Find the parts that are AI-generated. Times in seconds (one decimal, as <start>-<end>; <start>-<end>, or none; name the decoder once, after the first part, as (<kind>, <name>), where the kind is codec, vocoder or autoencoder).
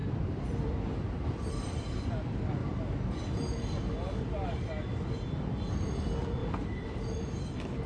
0.0-2.6 (vocoder, BigVGAN v2); 5.7-7.9